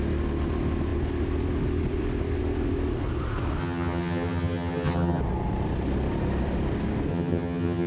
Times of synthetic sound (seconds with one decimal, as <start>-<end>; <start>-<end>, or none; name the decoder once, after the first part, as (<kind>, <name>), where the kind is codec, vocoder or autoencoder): 3.6-5.2 (vocoder, HiFi-GAN); 7.1-7.9

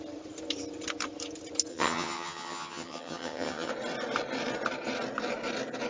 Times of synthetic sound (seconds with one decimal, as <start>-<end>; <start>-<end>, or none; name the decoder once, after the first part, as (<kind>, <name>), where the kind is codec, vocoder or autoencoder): 1.7-3.7 (vocoder, HiFi-GAN)

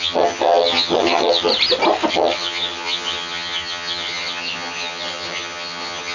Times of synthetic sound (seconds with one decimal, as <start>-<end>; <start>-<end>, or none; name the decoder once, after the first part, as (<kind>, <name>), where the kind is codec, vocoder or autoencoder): 0.0-1.5 (vocoder, HiFi-GAN); 2.1-6.1

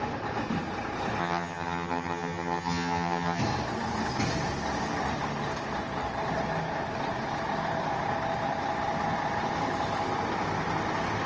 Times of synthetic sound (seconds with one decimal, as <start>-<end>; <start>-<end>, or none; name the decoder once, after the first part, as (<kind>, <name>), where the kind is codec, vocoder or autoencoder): 1.2-3.4 (vocoder, HiFi-GAN)

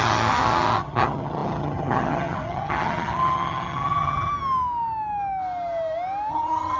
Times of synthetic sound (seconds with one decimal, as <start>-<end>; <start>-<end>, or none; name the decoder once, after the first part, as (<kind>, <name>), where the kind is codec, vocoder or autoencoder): 0.0-4.3 (vocoder, HiFi-GAN); 6.3-6.8